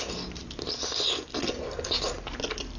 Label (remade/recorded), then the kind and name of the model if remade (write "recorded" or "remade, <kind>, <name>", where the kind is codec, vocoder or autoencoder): recorded